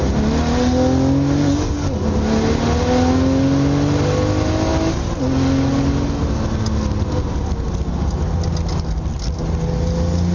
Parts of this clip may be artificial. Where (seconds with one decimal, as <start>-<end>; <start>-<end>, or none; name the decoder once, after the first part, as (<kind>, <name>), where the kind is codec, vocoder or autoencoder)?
none